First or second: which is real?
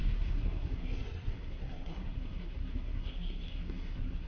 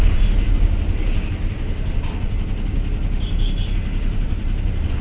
second